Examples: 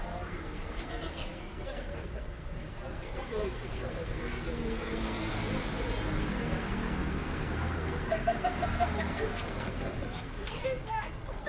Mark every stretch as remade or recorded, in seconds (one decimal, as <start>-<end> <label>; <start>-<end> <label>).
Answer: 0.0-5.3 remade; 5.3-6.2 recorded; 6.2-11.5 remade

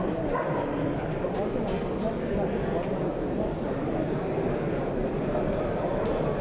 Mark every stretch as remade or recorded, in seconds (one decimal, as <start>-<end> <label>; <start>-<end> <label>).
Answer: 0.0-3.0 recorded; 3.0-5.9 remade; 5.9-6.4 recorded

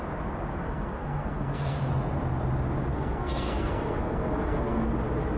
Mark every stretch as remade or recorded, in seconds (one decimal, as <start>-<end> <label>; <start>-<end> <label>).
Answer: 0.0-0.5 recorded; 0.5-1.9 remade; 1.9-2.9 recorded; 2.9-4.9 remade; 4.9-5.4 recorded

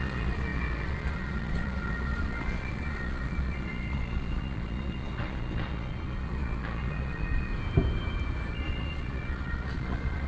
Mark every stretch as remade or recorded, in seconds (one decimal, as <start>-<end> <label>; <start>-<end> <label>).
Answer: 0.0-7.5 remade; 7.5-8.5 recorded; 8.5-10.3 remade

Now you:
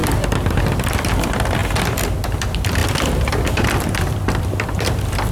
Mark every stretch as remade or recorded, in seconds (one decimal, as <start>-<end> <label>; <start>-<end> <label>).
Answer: 0.0-0.6 recorded; 0.6-1.6 remade; 1.6-2.2 recorded; 2.2-2.8 remade; 2.8-3.3 recorded; 3.3-5.3 remade

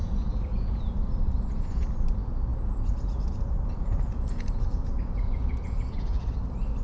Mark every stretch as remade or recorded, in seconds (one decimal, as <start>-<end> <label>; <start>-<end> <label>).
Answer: 0.0-0.8 remade; 0.8-1.3 recorded; 1.3-1.9 remade; 1.9-2.5 recorded; 2.5-6.3 remade; 6.3-6.8 recorded

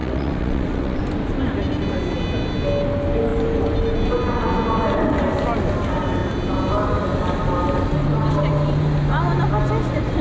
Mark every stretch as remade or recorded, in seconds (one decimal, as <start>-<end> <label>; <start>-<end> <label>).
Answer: 0.0-1.0 remade; 1.0-10.2 recorded

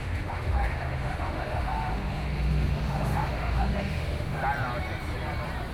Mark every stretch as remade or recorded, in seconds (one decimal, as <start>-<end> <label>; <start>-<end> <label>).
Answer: 0.0-4.4 remade; 4.4-5.7 recorded